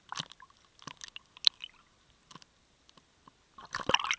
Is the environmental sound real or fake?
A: real